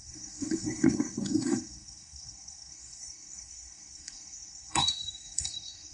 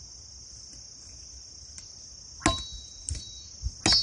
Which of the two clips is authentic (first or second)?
second